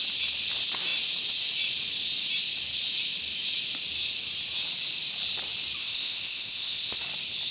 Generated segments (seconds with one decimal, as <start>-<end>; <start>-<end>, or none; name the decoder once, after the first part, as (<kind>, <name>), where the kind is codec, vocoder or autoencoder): 5.8-7.0 (codec, ZipCodec)